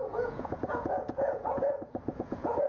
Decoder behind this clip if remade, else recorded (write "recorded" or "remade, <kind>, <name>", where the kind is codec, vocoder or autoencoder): remade, vocoder, Vocos